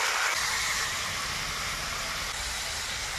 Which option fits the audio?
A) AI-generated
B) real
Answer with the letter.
A